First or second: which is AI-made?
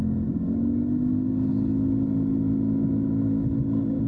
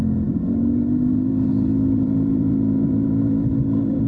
second